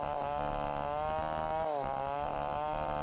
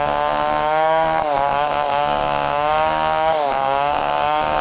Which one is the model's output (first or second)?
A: second